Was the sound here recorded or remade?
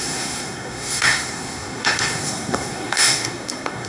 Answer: remade